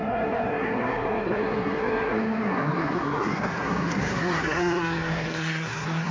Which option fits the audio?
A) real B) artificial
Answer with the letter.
B